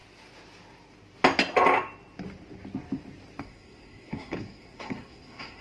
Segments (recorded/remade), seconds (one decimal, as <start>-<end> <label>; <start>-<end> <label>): 0.0-3.4 recorded; 3.4-5.6 remade